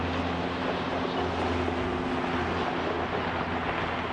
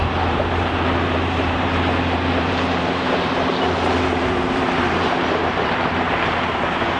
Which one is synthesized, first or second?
second